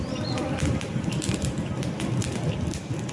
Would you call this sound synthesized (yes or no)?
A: no